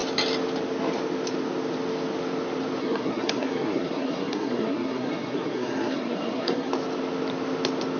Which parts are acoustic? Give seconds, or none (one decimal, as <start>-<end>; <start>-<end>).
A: 0.0-2.8; 6.7-8.0